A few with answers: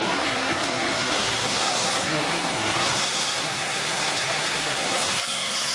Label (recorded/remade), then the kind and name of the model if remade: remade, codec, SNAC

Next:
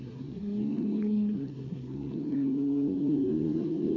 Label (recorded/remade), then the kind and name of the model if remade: remade, codec, SNAC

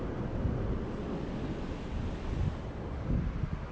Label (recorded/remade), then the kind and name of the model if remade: recorded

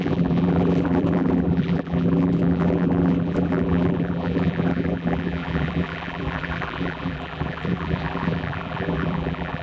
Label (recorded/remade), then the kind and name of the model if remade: remade, vocoder, BigVGAN v2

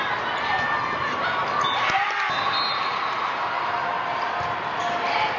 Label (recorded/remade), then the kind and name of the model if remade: recorded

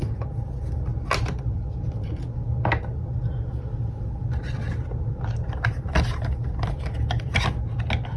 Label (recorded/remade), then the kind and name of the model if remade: recorded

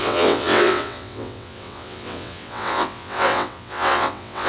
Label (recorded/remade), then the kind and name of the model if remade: remade, vocoder, WaveNeXt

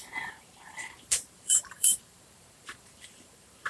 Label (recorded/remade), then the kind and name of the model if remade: remade, vocoder, BigVGAN v2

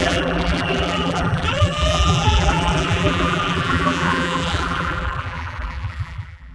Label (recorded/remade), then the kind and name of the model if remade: remade, vocoder, BigVGAN v2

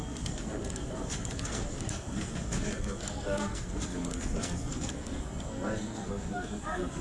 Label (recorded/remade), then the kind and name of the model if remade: remade, codec, SNAC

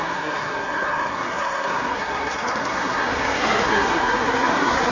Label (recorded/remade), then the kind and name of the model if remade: remade, codec, SNAC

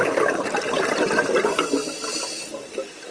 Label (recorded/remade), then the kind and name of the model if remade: recorded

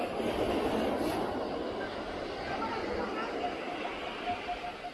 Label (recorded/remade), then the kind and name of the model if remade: recorded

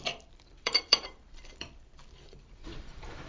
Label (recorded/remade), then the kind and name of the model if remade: remade, vocoder, BigVGAN v2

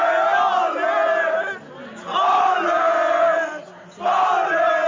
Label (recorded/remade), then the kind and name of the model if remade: recorded